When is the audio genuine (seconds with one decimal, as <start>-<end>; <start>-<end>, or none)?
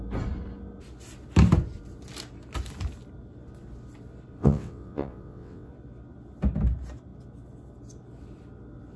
0.0-4.4; 5.7-9.0